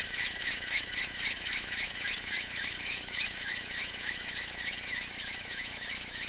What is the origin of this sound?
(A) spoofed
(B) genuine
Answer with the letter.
A